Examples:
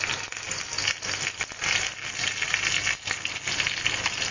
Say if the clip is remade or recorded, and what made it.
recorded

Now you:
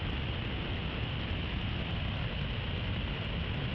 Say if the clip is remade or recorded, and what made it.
recorded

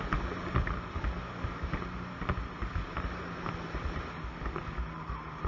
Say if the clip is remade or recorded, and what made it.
recorded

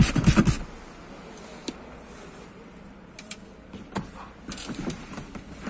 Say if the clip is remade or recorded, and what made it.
recorded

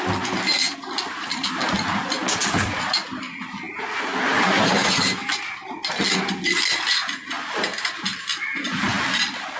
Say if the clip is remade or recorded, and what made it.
recorded